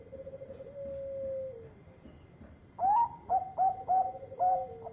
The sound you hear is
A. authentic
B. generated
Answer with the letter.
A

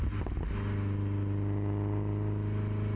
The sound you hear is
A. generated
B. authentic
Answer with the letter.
B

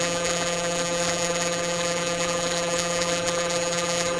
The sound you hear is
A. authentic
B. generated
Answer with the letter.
B